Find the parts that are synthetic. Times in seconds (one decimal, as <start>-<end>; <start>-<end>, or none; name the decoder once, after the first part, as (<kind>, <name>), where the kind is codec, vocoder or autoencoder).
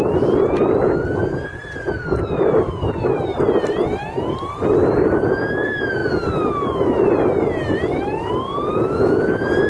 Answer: none